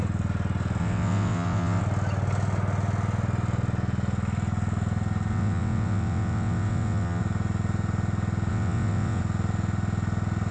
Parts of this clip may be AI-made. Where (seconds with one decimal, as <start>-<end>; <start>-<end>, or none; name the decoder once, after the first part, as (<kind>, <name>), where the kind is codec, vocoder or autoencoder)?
0.8-1.8 (vocoder, WaveNeXt); 5.3-7.2; 8.5-9.2